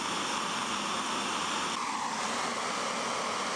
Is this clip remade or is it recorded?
recorded